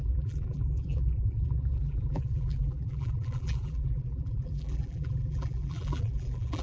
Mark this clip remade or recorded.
remade